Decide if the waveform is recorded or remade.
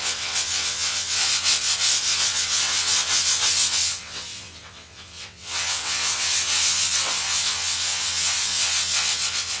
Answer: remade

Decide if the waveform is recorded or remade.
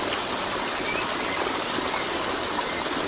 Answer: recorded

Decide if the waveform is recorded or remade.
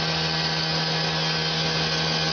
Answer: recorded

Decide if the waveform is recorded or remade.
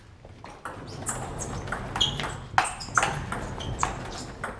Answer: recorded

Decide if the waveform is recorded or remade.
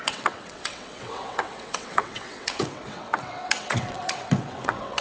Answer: remade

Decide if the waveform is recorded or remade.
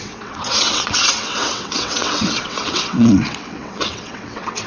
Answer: remade